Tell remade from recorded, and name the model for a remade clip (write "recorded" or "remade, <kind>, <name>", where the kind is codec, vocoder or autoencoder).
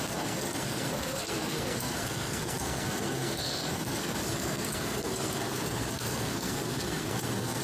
remade, codec, SNAC